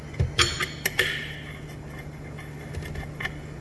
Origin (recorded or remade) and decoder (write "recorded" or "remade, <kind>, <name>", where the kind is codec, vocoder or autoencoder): recorded